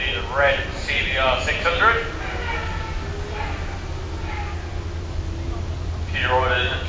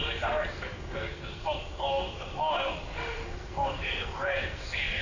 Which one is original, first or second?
first